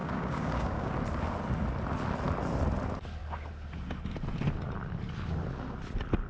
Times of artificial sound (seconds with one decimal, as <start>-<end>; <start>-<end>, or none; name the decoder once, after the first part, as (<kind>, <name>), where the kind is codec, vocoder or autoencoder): 0.0-0.9 (codec, DAC)